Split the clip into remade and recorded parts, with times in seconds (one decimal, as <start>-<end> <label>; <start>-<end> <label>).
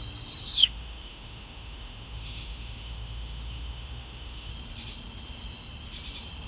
0.0-0.6 recorded; 0.6-4.5 remade; 4.5-6.5 recorded